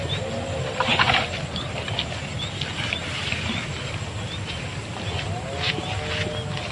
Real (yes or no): yes